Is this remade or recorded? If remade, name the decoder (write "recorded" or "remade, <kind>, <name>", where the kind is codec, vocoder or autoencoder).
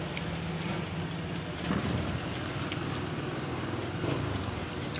recorded